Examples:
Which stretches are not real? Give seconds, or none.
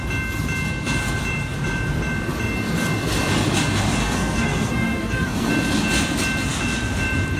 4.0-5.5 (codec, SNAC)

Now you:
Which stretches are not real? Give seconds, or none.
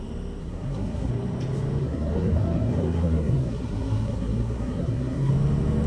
0.4-1.1 (codec, SNAC); 1.8-5.3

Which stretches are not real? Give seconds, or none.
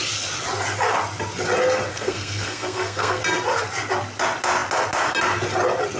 1.9-3.2 (codec, SNAC)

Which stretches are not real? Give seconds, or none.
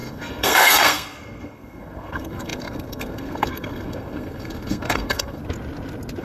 0.0-5.4 (codec, SNAC)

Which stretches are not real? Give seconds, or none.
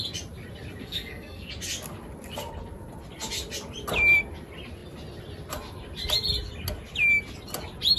0.8-1.5 (codec, SNAC)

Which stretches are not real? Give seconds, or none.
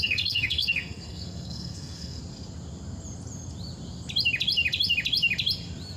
0.0-2.2 (codec, SNAC)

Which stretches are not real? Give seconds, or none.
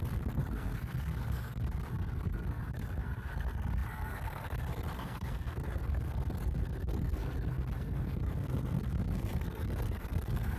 0.0-10.6 (codec, SNAC)